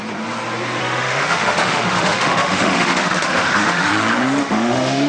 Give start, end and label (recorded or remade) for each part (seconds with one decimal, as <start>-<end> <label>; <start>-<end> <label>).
0.0-0.8 recorded; 0.8-3.9 remade; 3.9-4.4 recorded; 4.4-5.1 remade